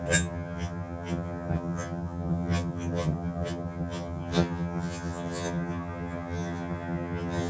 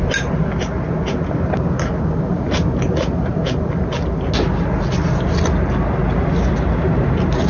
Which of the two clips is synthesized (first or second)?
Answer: first